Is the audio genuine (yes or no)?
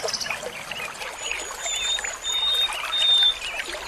yes